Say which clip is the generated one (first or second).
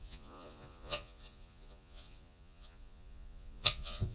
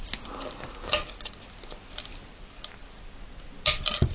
first